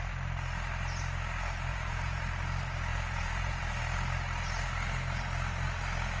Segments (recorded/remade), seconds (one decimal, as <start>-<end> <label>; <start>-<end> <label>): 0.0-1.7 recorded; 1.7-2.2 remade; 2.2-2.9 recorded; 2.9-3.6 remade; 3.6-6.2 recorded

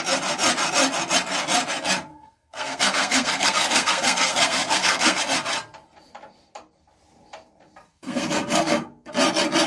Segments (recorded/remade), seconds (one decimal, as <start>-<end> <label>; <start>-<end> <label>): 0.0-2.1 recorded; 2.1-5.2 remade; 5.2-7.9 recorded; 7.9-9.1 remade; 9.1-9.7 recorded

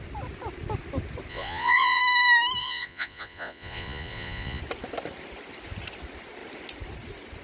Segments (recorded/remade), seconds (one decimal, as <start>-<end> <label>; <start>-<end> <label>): 0.0-1.3 recorded; 1.3-2.0 remade; 2.0-2.6 recorded; 2.6-4.6 remade; 4.6-7.4 recorded

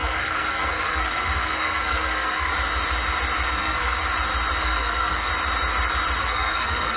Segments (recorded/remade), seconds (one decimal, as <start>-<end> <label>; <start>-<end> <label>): 0.0-2.5 remade; 2.5-3.5 recorded; 3.5-4.0 remade; 4.0-4.6 recorded; 4.6-5.3 remade; 5.3-6.2 recorded; 6.2-7.0 remade

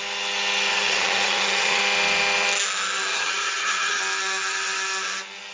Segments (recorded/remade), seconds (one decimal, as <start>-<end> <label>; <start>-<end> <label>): 0.0-0.7 recorded; 0.7-1.8 remade; 1.8-3.1 recorded; 3.1-4.0 remade; 4.0-5.5 recorded